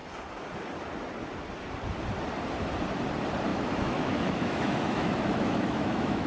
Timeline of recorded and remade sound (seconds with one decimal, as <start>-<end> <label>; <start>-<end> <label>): 0.0-3.5 recorded; 3.5-6.3 remade